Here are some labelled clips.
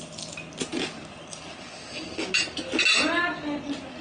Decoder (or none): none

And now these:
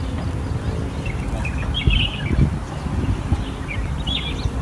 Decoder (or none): none